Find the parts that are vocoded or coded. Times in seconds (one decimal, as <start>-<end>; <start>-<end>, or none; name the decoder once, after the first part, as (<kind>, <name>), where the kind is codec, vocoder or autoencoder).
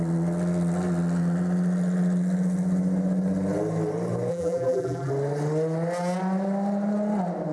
4.3-5.1 (vocoder, BigVGAN v2)